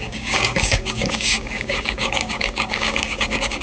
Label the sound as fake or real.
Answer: fake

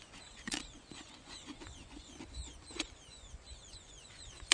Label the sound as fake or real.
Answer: fake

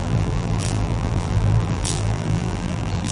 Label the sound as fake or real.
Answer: fake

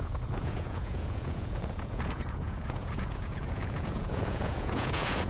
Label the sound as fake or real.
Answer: fake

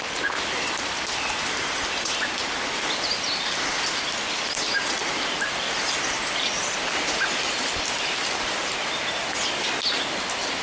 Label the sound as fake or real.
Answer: real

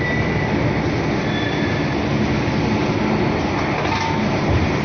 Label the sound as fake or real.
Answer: real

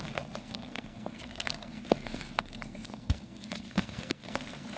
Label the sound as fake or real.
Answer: fake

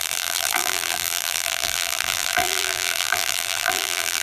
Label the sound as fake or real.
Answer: fake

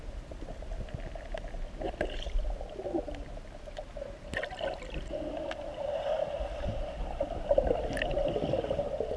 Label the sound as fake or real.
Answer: real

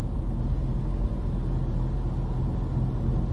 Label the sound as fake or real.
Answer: real